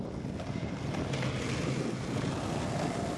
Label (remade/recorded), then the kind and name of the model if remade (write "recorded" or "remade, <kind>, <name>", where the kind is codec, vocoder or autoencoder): recorded